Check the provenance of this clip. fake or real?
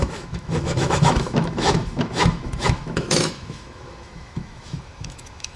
fake